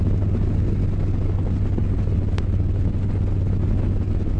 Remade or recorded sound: recorded